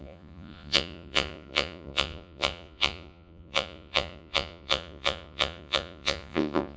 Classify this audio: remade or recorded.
remade